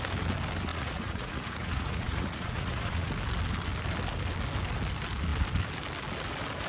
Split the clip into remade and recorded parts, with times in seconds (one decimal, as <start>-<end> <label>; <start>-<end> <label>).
0.0-0.7 recorded; 0.7-3.1 remade; 3.1-6.7 recorded